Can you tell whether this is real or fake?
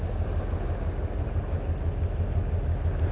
real